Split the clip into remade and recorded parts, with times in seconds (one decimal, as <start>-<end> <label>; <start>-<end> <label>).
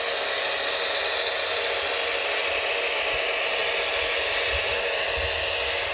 0.0-5.9 recorded